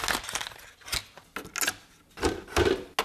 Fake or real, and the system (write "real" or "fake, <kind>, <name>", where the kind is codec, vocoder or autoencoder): real